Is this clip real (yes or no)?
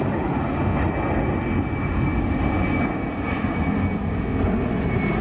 yes